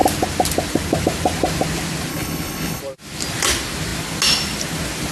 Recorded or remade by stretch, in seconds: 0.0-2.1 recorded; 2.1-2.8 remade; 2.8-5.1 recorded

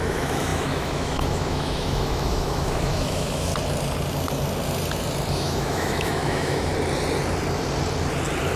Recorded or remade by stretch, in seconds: 0.0-3.5 remade; 3.5-5.3 recorded; 5.3-6.7 remade; 6.7-8.6 recorded

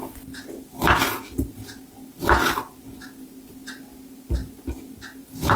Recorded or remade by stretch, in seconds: 0.0-5.6 recorded

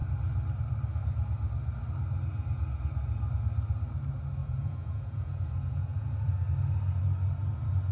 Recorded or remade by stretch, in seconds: 0.0-2.3 recorded; 2.3-2.8 remade; 2.8-4.4 recorded; 4.4-6.3 remade; 6.3-7.9 recorded